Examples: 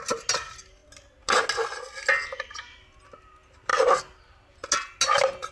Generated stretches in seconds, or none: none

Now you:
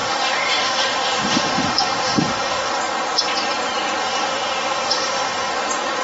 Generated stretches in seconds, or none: 0.0-2.7 (autoencoder, DAC-VAE); 4.0-5.5

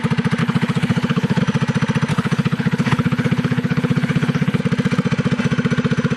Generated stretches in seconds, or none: 0.4-1.4 (codec, HILCodec); 2.1-4.6

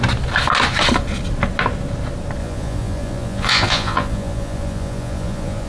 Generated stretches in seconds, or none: 2.4-5.7 (vocoder, Vocos)